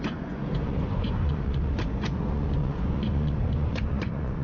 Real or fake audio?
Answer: fake